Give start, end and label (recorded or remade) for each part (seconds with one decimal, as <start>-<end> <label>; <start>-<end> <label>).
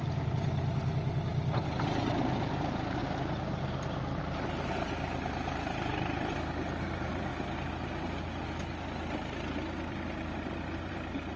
0.0-1.3 remade; 1.3-2.4 recorded; 2.4-3.0 remade; 3.0-4.2 recorded; 4.2-7.3 remade; 7.3-9.9 recorded; 9.9-11.4 remade